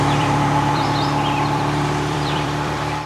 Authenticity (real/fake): fake